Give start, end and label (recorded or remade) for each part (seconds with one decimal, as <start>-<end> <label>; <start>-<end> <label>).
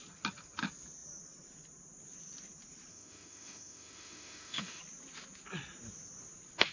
0.0-2.9 recorded; 2.9-4.8 remade; 4.8-6.7 recorded